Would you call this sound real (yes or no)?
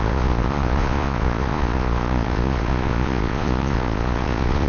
no